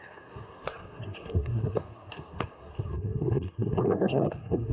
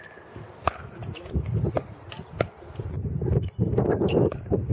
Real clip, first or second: second